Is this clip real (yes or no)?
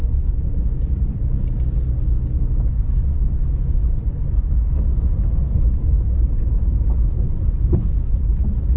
yes